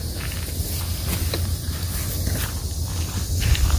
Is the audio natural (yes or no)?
yes